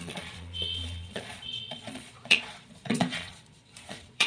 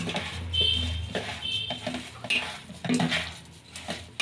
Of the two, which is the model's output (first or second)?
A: first